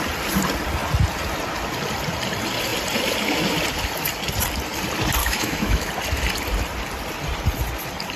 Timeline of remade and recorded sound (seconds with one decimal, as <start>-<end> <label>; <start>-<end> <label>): 0.0-5.2 recorded; 5.2-5.9 remade; 5.9-8.2 recorded